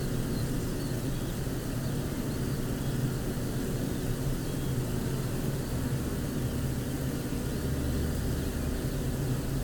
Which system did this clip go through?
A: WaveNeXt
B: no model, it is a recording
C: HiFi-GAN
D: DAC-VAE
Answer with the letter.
B